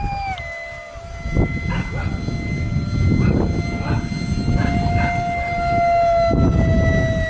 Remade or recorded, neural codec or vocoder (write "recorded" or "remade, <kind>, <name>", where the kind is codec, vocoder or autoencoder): recorded